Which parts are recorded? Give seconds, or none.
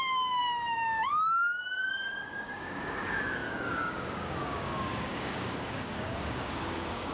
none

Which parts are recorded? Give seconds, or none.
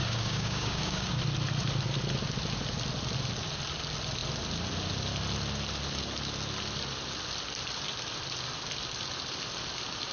1.2-10.1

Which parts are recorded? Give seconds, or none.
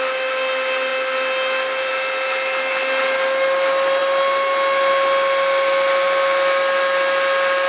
0.0-7.7